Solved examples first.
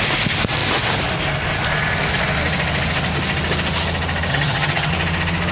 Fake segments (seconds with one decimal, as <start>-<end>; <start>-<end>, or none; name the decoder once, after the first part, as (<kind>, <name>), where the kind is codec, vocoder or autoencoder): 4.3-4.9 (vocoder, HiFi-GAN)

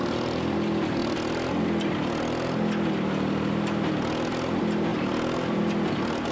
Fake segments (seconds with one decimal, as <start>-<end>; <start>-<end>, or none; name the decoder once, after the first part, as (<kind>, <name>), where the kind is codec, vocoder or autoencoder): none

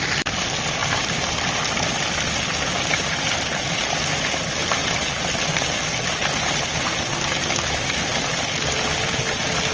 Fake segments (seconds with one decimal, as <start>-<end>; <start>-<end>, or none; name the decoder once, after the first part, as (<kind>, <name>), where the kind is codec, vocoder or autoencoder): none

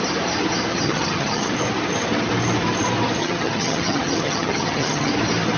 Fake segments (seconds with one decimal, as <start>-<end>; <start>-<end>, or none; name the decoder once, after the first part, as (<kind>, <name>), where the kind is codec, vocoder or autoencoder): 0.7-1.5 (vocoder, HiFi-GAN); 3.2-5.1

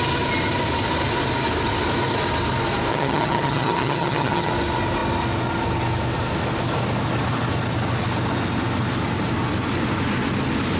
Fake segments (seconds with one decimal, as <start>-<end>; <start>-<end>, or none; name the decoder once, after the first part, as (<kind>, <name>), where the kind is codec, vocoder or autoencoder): 2.9-4.5 (vocoder, HiFi-GAN)